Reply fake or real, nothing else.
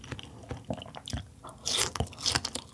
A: real